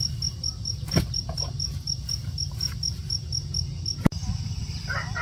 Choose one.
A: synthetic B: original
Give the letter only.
B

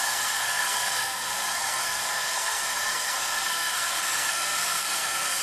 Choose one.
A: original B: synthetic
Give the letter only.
B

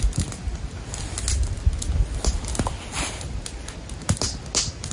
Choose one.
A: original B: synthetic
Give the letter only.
A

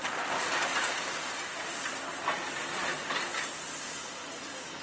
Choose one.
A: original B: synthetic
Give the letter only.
A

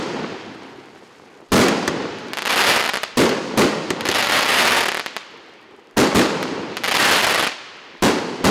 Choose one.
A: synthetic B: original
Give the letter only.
B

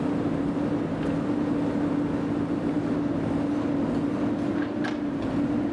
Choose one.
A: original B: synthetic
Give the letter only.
A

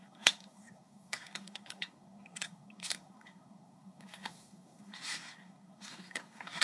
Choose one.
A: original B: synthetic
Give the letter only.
B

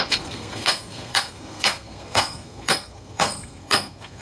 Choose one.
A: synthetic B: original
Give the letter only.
A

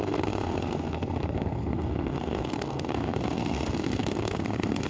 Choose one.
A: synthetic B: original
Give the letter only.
A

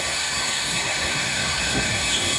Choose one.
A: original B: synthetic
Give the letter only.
B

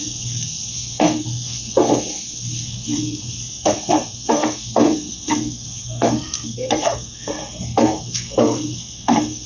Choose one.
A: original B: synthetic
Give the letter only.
B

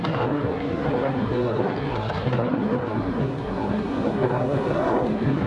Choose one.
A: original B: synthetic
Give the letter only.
B